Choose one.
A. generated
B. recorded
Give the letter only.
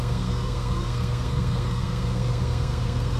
A